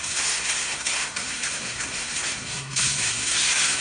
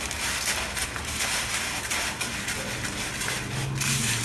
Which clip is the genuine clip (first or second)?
second